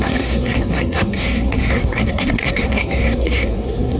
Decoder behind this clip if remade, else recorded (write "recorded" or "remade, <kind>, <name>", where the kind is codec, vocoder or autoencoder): remade, codec, SNAC